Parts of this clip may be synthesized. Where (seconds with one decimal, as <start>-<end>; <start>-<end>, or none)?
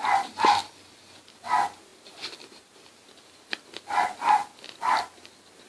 none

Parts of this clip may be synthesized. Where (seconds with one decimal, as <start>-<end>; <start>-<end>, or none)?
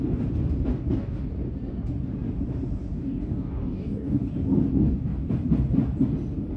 0.7-1.3; 2.9-4.3; 4.7-5.3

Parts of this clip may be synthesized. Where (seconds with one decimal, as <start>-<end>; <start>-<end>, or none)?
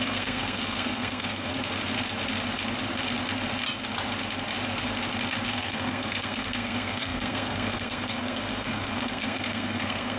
0.0-1.5; 5.5-10.2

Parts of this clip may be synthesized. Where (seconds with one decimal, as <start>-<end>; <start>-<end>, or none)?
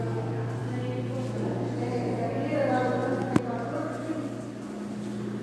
none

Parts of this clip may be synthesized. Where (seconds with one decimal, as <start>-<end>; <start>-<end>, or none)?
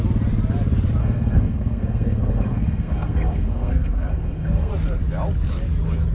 1.0-4.7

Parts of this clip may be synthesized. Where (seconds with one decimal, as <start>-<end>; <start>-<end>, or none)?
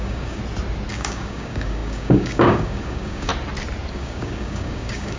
0.0-0.4; 0.9-3.3; 3.9-5.2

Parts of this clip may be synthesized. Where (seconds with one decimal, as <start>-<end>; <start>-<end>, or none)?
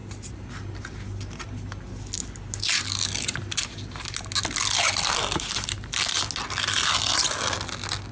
none